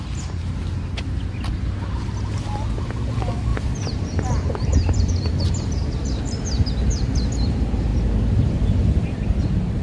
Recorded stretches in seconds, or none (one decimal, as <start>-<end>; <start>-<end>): 0.0-3.5; 6.2-9.8